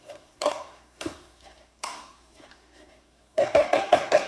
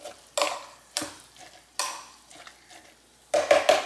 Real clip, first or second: second